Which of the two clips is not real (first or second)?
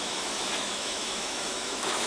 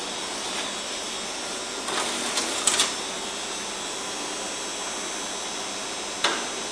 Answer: first